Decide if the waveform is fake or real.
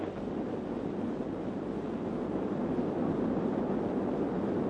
real